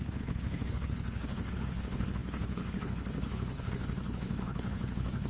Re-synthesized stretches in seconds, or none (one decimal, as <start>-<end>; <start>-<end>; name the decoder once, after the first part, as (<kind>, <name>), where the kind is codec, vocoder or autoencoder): 0.0-5.3 (codec, HILCodec)